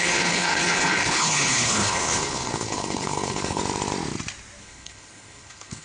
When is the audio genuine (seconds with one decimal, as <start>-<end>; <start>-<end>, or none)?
3.6-4.6